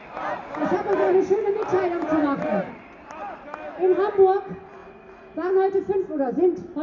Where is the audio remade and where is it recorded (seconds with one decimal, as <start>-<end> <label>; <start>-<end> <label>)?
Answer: 0.0-6.8 recorded